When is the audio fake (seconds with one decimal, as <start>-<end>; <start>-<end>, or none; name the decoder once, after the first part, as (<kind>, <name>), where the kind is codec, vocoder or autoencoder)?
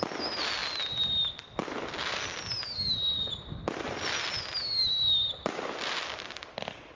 none